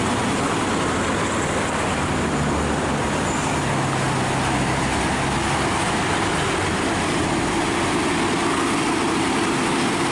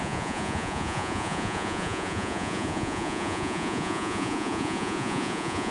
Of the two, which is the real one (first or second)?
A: first